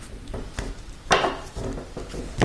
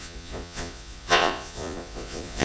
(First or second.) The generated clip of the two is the second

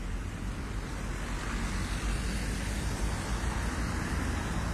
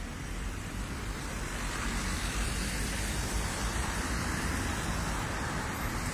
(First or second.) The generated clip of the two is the second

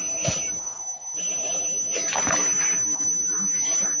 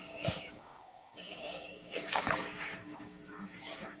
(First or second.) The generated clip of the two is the second